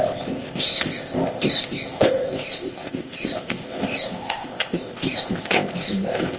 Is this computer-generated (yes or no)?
yes